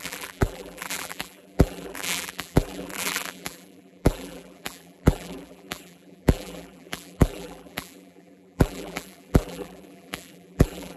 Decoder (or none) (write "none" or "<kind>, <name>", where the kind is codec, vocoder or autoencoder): vocoder, BigVGAN v2